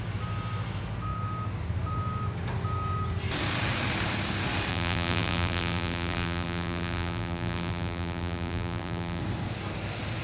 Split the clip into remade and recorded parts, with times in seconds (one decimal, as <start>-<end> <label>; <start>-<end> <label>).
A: 0.0-4.7 recorded; 4.7-9.2 remade; 9.2-10.2 recorded